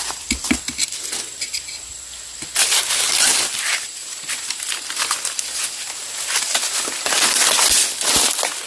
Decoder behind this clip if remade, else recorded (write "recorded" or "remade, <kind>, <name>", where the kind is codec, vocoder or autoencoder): recorded